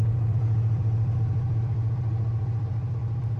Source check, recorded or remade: remade